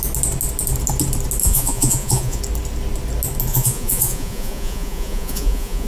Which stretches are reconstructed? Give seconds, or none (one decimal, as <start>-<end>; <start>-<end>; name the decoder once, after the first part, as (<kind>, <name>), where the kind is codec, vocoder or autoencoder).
1.4-2.4 (vocoder, Vocos); 3.5-5.9

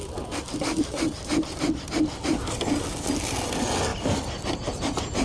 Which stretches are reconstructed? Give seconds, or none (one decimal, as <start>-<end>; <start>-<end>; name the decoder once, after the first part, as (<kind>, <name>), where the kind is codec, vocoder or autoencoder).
none